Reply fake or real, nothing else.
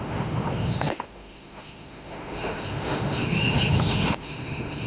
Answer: fake